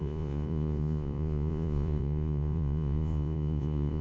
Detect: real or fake fake